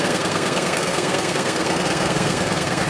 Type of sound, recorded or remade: remade